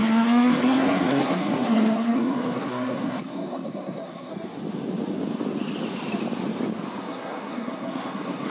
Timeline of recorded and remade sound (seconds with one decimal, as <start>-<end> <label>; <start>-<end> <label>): 0.0-4.3 remade; 4.3-7.0 recorded; 7.0-8.5 remade